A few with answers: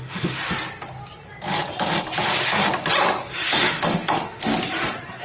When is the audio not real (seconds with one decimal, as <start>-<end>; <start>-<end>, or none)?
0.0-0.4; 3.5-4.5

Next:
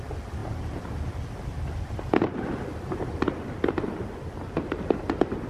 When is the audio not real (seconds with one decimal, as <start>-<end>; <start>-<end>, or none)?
none

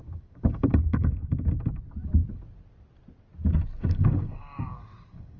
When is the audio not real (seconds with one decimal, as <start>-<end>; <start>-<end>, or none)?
0.0-1.2; 3.9-5.4